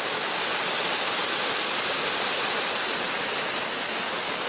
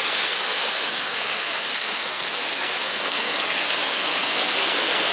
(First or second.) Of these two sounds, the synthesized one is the second